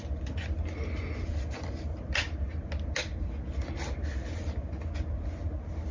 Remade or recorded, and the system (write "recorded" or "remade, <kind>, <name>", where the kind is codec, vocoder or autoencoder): recorded